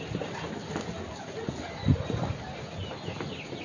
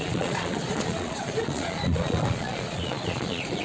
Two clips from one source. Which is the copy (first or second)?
second